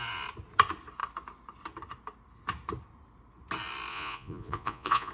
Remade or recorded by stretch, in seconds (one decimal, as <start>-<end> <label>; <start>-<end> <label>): 0.0-3.9 recorded; 3.9-5.1 remade